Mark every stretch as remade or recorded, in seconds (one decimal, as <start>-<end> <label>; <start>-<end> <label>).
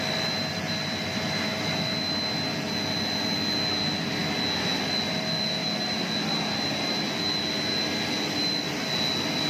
0.0-9.5 recorded